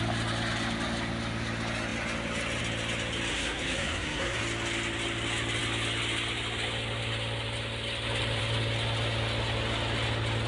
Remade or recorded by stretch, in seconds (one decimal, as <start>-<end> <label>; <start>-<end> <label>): 0.0-3.3 recorded; 3.3-4.4 remade; 4.4-10.5 recorded